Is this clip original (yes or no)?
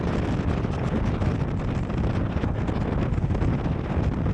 yes